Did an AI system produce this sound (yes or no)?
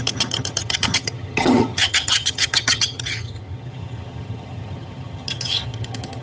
yes